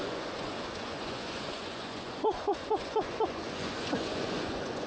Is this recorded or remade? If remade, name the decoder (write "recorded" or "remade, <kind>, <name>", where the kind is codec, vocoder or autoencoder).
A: remade, vocoder, Vocos